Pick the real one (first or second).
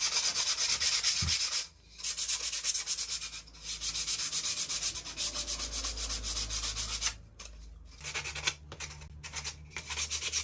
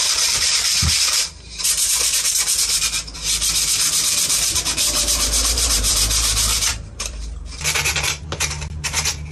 first